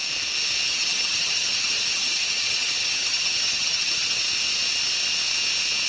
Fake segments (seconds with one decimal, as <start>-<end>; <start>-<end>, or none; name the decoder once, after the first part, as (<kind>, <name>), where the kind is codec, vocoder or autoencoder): 0.7-4.2 (vocoder, HiFi-GAN)